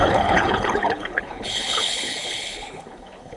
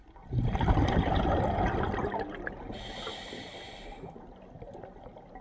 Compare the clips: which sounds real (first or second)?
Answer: second